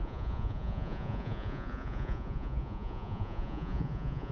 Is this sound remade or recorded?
remade